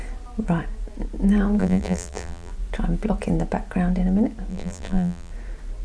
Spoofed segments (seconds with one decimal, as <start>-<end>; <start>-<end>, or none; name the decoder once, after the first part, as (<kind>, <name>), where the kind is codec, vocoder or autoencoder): 1.6-2.5 (vocoder, BigVGAN v2); 4.5-5.3